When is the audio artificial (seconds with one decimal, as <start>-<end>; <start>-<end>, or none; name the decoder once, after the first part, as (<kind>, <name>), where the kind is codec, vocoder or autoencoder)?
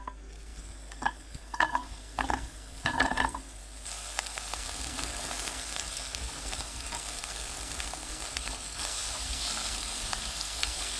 0.0-11.0 (codec, SNAC)